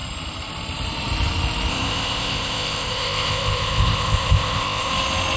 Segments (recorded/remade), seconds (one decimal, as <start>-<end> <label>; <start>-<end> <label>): 0.0-1.7 recorded; 1.7-4.9 remade; 4.9-5.4 recorded